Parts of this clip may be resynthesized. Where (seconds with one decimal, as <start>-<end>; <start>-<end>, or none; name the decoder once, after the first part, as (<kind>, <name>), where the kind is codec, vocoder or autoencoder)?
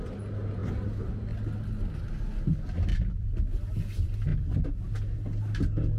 2.9-3.4 (vocoder, BigVGAN v2)